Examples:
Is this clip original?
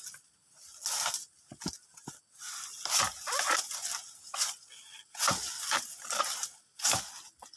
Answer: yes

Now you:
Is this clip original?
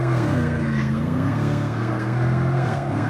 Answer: no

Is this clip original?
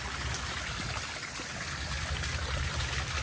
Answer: yes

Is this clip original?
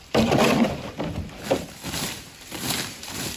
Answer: no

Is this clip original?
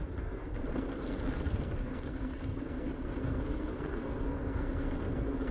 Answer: no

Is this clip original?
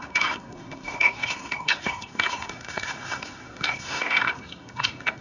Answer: no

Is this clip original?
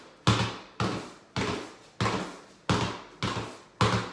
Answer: yes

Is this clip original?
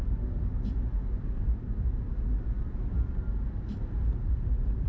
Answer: no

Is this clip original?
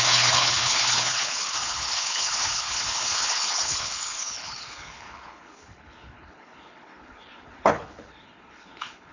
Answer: no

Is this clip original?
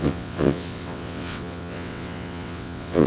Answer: no